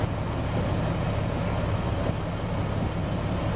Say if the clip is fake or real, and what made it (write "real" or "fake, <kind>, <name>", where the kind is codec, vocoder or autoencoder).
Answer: real